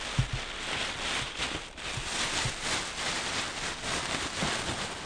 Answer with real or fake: real